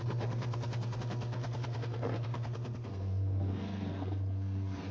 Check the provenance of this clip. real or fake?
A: fake